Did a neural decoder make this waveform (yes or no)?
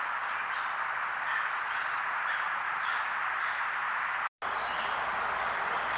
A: no